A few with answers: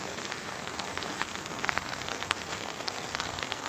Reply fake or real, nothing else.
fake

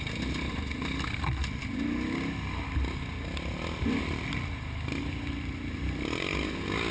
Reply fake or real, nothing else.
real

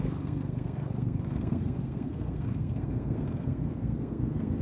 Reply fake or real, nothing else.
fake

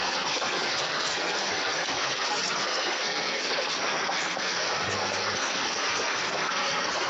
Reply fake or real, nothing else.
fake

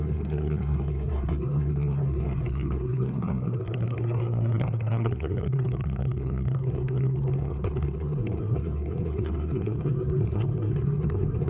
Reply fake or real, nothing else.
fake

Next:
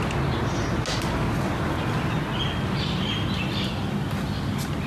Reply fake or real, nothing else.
real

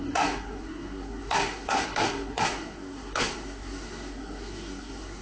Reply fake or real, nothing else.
fake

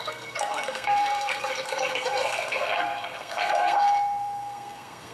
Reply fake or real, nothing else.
fake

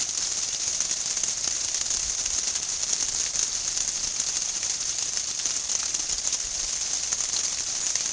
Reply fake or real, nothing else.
real